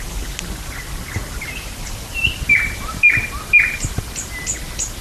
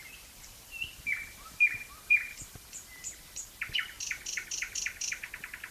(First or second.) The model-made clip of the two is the second